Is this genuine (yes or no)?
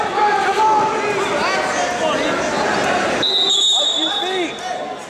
yes